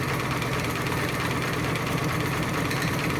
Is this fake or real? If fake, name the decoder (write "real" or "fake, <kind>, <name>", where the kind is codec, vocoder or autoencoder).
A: real